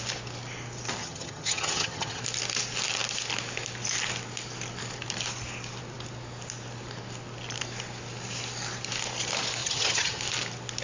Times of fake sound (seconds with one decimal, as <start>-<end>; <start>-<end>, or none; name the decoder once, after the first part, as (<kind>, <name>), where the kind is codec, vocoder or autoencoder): 1.0-2.2 (vocoder, HiFi-GAN); 9.6-10.2